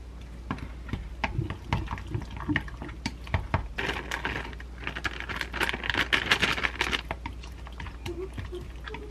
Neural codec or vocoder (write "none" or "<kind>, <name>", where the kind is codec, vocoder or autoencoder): none